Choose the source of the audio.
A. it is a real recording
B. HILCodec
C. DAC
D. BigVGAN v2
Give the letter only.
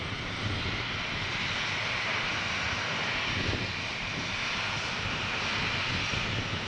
A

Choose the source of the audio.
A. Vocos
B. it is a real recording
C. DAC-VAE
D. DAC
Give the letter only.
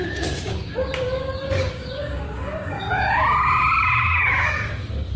D